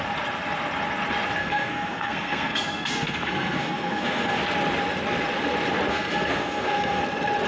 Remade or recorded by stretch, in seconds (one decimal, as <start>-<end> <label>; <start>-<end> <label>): 0.0-1.4 recorded; 1.4-4.4 remade; 4.4-5.9 recorded; 5.9-7.0 remade; 7.0-7.5 recorded